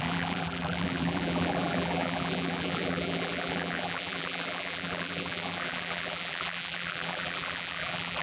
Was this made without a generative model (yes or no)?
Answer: no